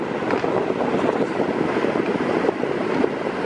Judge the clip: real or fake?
real